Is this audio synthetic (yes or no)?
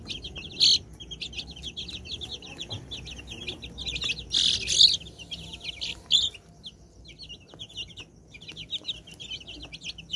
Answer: no